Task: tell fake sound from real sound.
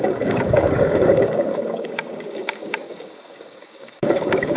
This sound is fake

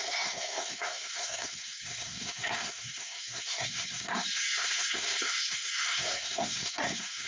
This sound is fake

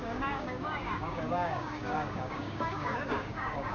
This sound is fake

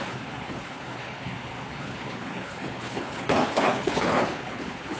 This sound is fake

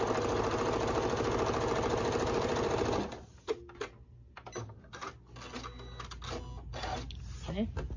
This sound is real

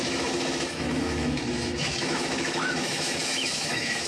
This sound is fake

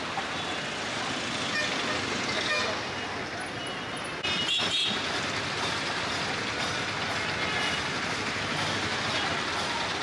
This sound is real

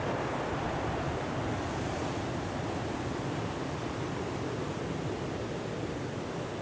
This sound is real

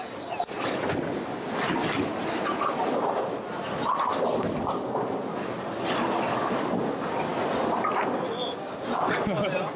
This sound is real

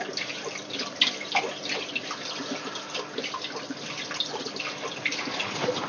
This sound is real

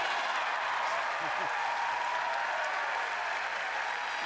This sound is real